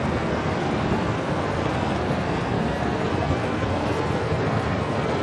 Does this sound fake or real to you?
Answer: fake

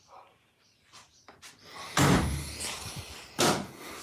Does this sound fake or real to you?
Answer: real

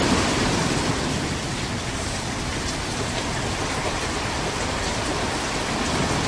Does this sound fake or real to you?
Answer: fake